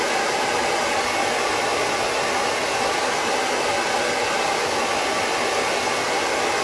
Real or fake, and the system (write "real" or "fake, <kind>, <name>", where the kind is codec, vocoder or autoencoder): real